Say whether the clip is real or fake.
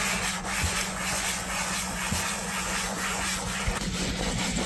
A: fake